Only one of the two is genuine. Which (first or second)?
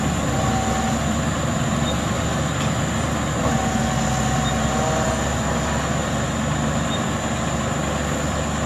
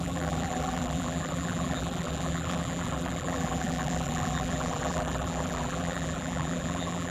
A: first